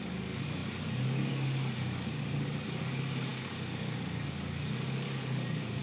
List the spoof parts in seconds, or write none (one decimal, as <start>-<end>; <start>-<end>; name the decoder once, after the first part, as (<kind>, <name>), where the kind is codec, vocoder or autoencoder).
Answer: 0.0-5.8 (codec, DAC)